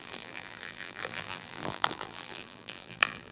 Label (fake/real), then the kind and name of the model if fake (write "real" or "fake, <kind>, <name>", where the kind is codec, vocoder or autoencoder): fake, vocoder, BigVGAN v2